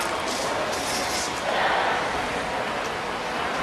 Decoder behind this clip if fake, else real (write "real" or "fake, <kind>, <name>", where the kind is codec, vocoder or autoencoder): real